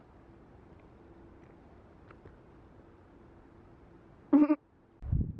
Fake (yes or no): no